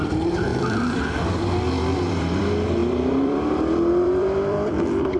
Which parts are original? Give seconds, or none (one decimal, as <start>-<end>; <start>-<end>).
none